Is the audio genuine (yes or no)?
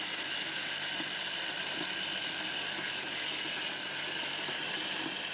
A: yes